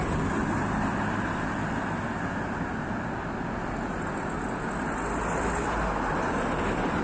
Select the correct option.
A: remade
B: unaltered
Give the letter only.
B